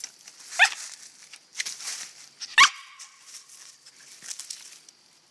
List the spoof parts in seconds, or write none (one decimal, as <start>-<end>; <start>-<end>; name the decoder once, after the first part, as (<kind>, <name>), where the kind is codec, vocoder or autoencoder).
none